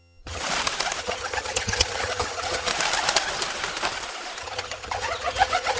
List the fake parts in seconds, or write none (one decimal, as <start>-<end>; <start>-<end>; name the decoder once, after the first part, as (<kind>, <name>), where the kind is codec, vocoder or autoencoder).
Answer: 0.0-0.4 (vocoder, HiFi-GAN); 1.0-2.7; 4.4-5.8